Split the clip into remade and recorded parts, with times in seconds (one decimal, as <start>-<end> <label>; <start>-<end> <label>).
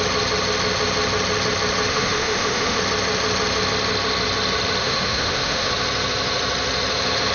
0.0-1.9 recorded; 1.9-2.8 remade; 2.8-4.8 recorded; 4.8-5.7 remade; 5.7-7.3 recorded